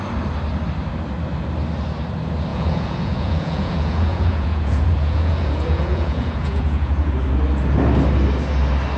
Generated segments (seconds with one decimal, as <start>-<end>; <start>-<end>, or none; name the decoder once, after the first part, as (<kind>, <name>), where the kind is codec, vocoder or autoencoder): 2.5-7.1 (vocoder, Vocos)